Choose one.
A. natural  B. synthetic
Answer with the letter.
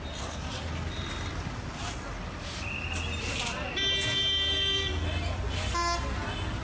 A